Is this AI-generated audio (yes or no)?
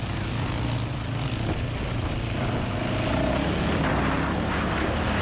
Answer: no